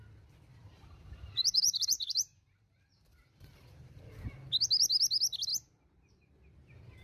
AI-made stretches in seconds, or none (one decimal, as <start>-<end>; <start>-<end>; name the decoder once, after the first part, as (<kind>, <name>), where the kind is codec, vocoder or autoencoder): 0.5-4.0 (vocoder, BigVGAN v2)